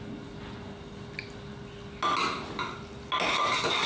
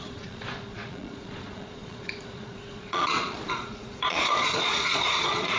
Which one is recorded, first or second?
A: first